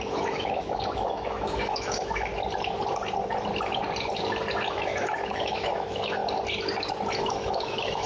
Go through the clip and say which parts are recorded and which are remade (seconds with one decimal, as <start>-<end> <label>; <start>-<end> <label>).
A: 0.0-2.3 remade; 2.3-4.7 recorded; 4.7-6.2 remade; 6.2-7.2 recorded; 7.2-8.1 remade